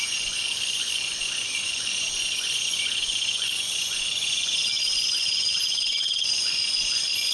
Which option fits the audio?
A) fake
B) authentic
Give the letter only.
A